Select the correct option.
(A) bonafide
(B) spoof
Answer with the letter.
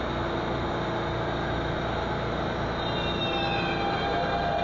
A